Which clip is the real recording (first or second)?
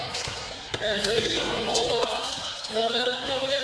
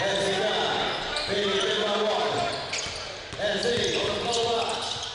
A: second